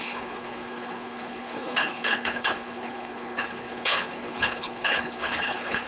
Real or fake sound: fake